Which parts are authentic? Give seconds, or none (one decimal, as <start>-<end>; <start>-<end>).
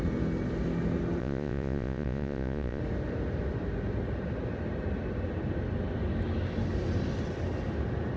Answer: 0.0-1.2; 2.8-8.2